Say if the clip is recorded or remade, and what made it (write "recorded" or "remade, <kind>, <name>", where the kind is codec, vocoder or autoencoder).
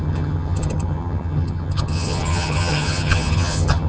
remade, vocoder, HiFi-GAN